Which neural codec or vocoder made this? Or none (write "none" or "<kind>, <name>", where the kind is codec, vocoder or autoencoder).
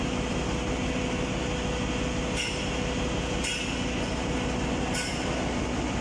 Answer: none